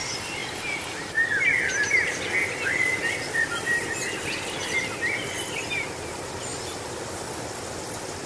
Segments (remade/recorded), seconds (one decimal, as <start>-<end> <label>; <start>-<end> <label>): 0.0-8.3 recorded